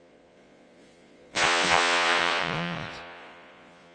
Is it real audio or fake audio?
fake